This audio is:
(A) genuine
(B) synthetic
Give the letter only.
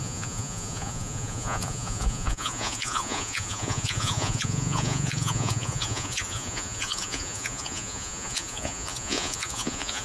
B